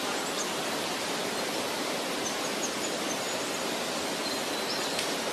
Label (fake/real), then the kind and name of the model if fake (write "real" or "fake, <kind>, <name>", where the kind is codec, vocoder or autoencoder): real